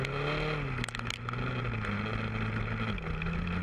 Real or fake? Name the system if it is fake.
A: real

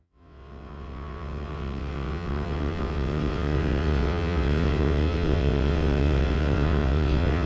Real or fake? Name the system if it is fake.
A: fake, vocoder, WaveNeXt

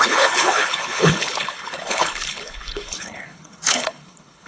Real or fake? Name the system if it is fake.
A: fake, codec, HILCodec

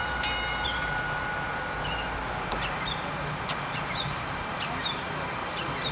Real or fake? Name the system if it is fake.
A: real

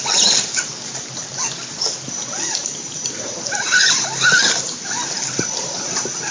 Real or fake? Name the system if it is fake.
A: real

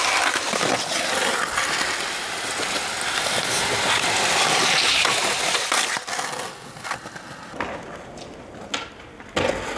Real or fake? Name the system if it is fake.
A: real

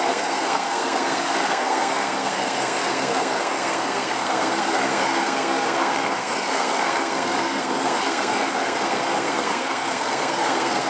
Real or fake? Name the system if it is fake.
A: fake, codec, SNAC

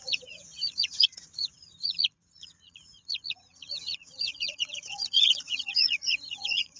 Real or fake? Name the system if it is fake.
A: fake, vocoder, Vocos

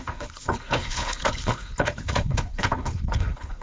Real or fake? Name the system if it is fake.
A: fake, codec, HILCodec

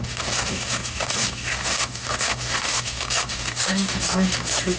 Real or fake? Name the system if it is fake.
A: fake, codec, DAC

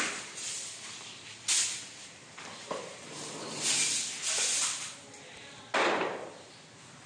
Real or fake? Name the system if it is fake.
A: real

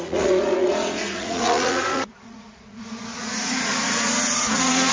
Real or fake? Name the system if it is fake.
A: fake, vocoder, Vocos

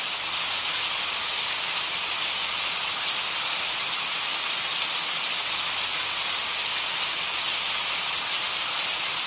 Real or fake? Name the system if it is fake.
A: real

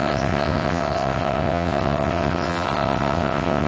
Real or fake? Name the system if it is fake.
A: fake, vocoder, WaveNeXt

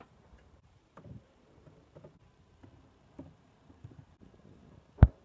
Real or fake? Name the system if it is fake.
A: fake, vocoder, BigVGAN v2